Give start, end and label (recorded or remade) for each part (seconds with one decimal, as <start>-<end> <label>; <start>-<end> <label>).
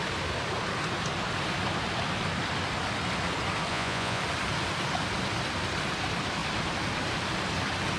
0.0-3.7 recorded; 3.7-4.2 remade; 4.2-8.0 recorded